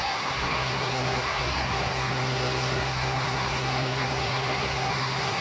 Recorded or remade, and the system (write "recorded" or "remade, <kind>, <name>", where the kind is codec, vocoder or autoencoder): remade, codec, SNAC